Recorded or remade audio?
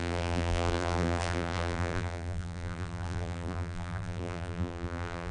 remade